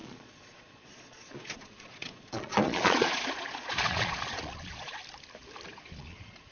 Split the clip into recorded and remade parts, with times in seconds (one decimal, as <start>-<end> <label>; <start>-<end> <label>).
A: 0.0-5.0 remade; 5.0-5.7 recorded; 5.7-6.5 remade